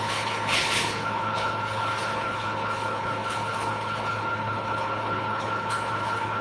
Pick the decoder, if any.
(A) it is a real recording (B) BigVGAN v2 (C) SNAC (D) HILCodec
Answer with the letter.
D